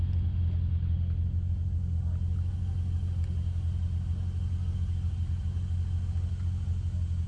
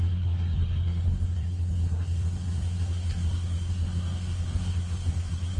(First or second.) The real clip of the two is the first